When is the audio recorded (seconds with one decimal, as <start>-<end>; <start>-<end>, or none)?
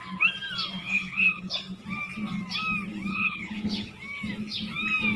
0.0-0.8; 1.6-3.1; 3.9-5.2